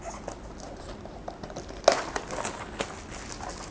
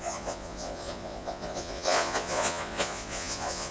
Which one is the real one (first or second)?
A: first